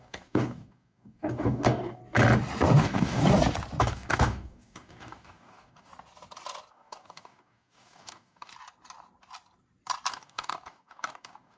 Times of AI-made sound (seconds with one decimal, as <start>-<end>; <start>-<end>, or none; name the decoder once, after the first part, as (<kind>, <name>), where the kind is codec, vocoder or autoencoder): 0.0-2.0 (codec, DAC); 2.8-3.2; 3.8-5.9; 6.7-8.5; 10.1-11.6

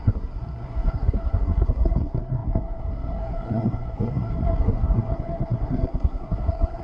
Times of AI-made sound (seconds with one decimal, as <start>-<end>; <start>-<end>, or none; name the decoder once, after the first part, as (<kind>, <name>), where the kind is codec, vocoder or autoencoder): 0.0-6.8 (codec, SNAC)

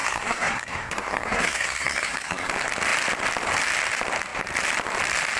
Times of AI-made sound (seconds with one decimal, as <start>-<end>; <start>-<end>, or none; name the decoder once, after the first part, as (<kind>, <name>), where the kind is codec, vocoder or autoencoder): 0.0-2.5 (codec, SNAC)

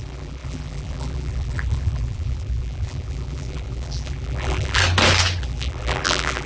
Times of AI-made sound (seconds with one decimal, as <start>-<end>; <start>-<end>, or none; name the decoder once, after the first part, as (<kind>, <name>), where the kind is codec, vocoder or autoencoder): 0.0-4.8 (vocoder, BigVGAN v2); 5.4-6.5

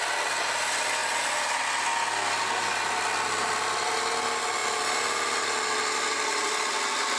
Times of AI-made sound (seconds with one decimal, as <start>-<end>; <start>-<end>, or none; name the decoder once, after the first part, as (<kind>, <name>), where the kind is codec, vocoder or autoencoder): none